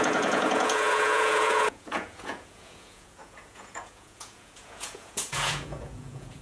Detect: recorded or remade remade